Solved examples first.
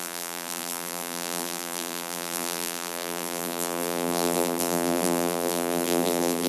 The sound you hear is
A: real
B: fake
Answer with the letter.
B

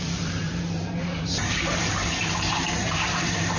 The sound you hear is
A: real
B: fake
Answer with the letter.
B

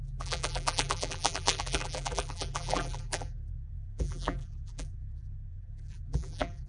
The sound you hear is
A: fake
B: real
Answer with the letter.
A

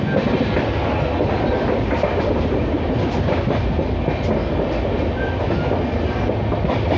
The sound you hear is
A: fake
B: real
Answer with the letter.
B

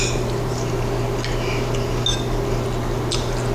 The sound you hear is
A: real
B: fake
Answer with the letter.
A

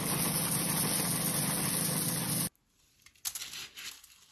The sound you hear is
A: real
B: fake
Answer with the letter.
A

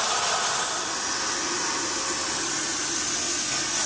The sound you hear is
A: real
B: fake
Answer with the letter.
A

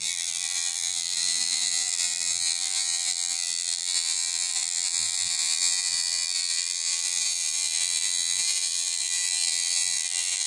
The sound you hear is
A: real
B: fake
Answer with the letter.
B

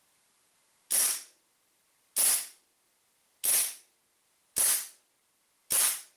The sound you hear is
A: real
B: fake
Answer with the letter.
A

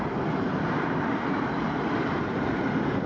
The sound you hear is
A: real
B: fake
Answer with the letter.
B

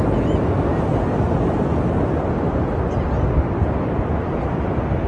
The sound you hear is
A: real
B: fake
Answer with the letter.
A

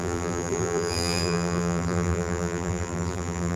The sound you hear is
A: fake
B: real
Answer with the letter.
A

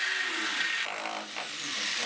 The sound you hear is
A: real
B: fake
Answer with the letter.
B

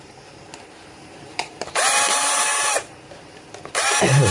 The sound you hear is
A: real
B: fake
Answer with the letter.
B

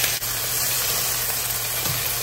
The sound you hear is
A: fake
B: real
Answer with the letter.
A